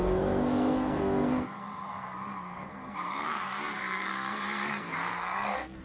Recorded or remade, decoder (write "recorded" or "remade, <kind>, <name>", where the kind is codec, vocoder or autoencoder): remade, codec, SNAC